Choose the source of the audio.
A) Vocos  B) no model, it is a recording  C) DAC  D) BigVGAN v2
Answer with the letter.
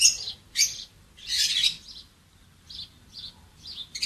D